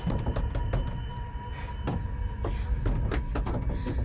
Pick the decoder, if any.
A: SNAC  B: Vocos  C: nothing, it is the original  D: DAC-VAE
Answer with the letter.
C